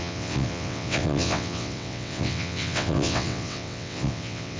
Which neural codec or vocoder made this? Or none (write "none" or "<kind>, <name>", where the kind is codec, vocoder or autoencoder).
vocoder, WaveNeXt